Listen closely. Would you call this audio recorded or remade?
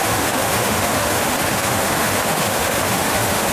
remade